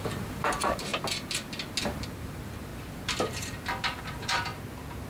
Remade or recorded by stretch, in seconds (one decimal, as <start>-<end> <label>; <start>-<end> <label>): 0.0-0.9 remade; 0.9-2.2 recorded; 2.2-4.5 remade; 4.5-5.1 recorded